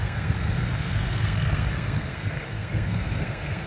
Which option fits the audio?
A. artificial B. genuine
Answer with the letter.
A